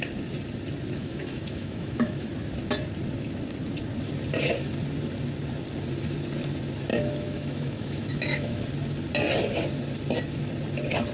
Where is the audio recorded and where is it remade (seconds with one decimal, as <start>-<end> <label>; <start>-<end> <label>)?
0.0-1.0 recorded; 1.0-2.3 remade; 2.3-6.9 recorded; 6.9-8.6 remade; 8.6-11.1 recorded